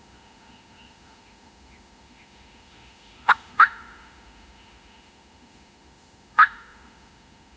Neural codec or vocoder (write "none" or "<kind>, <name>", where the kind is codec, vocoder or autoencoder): autoencoder, DAC-VAE